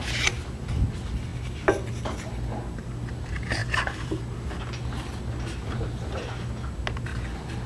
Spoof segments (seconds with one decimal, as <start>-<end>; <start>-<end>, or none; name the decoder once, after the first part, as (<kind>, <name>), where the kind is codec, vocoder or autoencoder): none

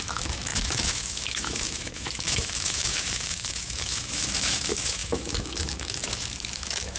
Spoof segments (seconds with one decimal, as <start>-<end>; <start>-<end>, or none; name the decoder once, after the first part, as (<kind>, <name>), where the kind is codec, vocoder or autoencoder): 0.0-7.0 (autoencoder, DAC-VAE)

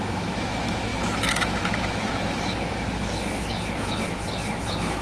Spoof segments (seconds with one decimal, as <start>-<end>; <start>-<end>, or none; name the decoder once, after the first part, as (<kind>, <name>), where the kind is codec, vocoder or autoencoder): 0.0-5.0 (autoencoder, DAC-VAE)

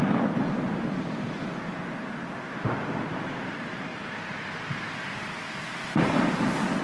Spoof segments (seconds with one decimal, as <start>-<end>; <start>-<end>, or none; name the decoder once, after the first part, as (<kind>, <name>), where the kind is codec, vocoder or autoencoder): none

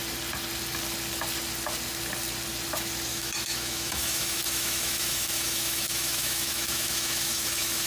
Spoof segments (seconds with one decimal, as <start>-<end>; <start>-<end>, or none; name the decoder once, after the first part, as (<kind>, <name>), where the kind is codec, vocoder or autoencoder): 3.1-7.9 (autoencoder, DAC-VAE)